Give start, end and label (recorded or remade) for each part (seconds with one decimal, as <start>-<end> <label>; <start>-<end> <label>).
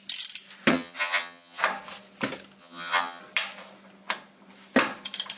0.0-0.7 recorded; 0.7-1.6 remade; 1.6-2.6 recorded; 2.6-3.2 remade; 3.2-5.4 recorded